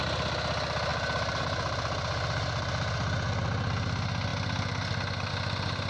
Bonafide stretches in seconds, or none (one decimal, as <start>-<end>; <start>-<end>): 0.0-5.9